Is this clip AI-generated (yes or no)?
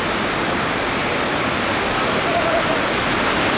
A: no